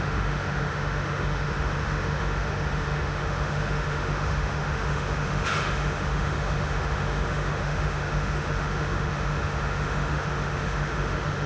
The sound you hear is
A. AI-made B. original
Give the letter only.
A